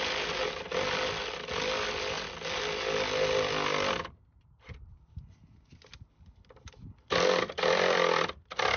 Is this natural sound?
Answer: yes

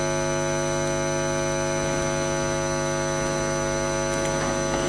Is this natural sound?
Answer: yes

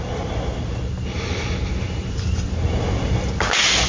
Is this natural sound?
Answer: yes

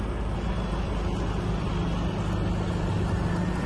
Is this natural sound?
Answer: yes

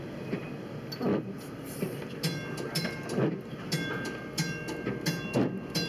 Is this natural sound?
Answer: yes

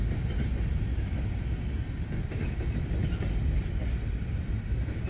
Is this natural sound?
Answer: yes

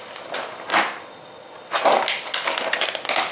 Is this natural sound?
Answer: yes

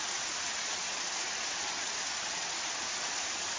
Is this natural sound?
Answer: yes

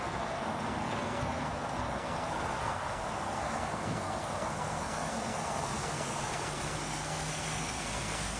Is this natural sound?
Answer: no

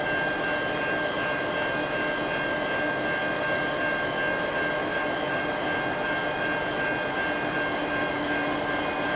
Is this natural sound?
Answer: yes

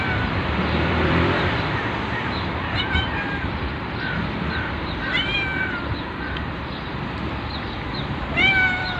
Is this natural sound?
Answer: no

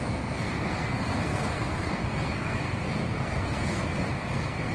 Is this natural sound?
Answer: no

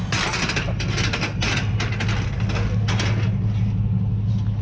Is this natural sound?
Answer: yes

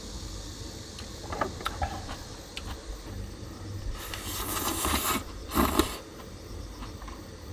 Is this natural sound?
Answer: yes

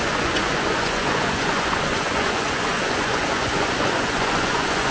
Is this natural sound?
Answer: no